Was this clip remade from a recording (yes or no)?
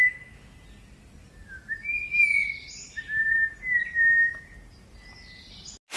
no